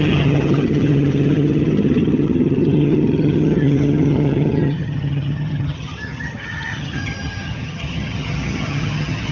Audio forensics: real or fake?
fake